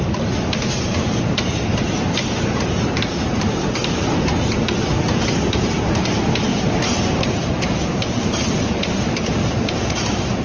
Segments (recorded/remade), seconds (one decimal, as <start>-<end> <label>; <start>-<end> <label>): 0.0-10.4 remade